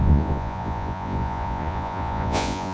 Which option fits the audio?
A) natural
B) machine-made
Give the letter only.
B